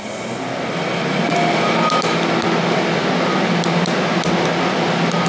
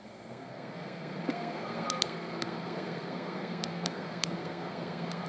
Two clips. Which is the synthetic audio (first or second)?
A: second